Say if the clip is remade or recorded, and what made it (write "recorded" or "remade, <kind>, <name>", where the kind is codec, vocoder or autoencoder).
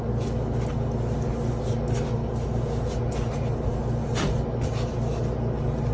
recorded